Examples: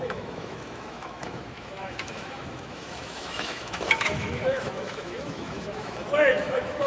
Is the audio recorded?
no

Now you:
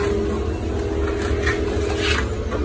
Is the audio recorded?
yes